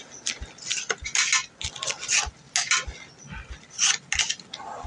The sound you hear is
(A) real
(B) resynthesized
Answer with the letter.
A